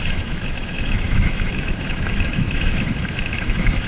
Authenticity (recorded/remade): remade